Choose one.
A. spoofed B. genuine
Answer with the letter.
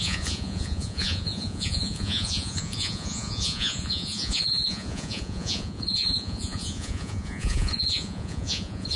A